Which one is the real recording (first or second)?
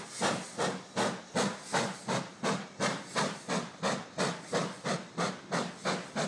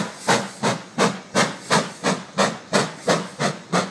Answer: first